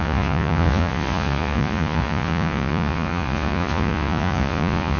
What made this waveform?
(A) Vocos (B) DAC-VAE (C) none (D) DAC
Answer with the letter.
A